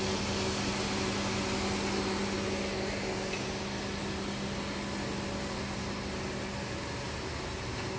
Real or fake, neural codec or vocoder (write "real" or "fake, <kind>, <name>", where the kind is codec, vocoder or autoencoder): real